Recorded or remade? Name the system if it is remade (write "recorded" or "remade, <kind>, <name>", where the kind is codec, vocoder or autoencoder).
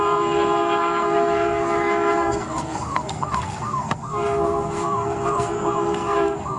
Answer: remade, codec, SNAC